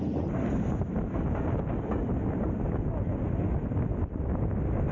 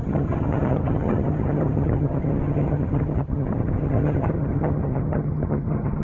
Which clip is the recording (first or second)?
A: first